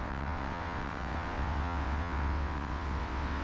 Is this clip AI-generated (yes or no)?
yes